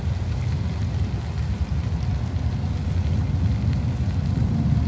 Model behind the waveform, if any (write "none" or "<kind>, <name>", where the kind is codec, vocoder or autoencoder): none